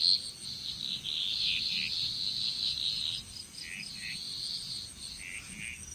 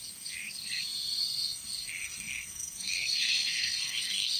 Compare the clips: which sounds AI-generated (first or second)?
second